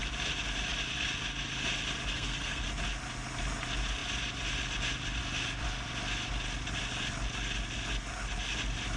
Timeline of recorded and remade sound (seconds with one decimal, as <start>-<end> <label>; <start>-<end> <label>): 0.0-2.1 recorded; 2.1-2.6 remade; 2.6-9.0 recorded